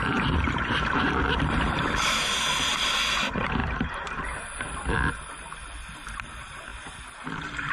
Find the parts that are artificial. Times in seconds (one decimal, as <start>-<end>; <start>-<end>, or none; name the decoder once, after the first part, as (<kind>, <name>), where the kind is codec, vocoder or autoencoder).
0.0-1.6 (vocoder, BigVGAN v2); 3.6-4.2